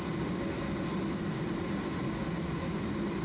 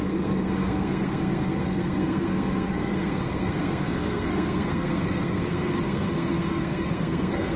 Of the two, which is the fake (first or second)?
second